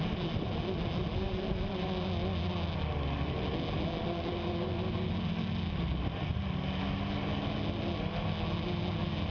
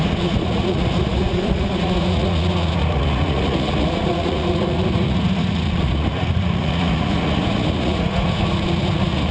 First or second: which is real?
first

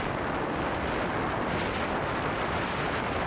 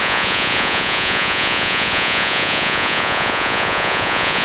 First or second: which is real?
first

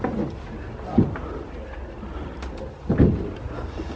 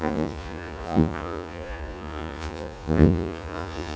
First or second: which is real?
first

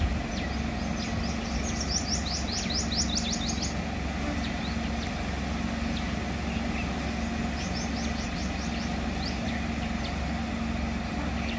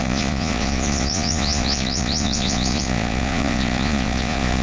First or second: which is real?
first